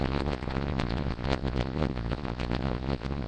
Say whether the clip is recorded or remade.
remade